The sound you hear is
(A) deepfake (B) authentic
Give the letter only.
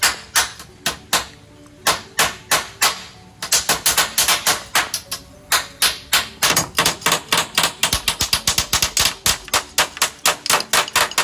B